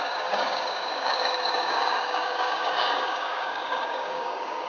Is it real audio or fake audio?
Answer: fake